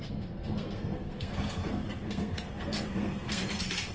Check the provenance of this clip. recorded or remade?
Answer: remade